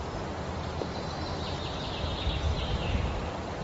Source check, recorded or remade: remade